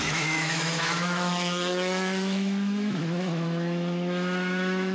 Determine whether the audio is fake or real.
fake